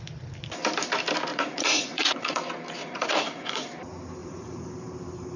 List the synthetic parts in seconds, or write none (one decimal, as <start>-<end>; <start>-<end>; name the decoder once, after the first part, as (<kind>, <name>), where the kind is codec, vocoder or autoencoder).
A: 1.3-2.4 (vocoder, Vocos); 2.8-3.7; 4.2-4.7